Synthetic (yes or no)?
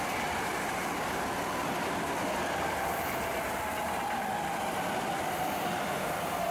no